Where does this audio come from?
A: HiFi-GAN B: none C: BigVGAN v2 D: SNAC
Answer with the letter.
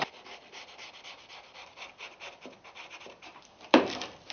C